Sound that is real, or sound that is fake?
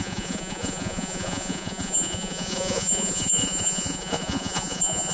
fake